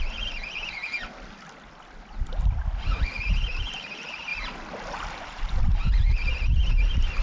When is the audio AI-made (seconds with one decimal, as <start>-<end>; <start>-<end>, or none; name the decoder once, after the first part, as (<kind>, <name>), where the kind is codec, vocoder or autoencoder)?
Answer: none